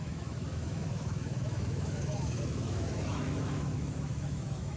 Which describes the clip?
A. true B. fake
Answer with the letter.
B